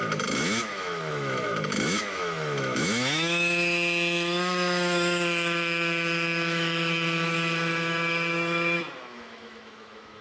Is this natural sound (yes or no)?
no